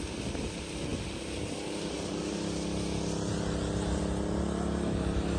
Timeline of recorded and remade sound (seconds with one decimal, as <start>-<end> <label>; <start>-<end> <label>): 0.0-5.4 recorded